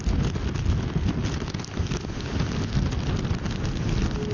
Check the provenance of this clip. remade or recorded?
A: recorded